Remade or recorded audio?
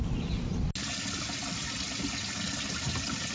recorded